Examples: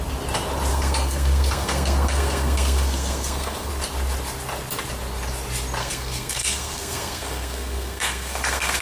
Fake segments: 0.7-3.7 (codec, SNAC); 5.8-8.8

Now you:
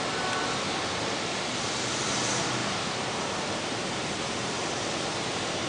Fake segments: 2.6-5.7 (vocoder, BigVGAN v2)

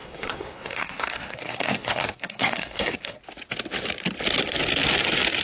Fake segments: 0.0-3.2 (codec, SNAC)

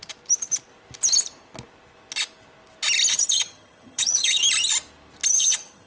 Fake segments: 3.1-4.4 (vocoder, HiFi-GAN); 5.3-5.9

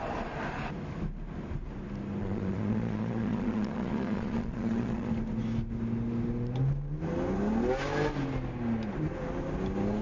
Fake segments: 2.2-5.1 (vocoder, Vocos)